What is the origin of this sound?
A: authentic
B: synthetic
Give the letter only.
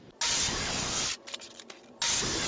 A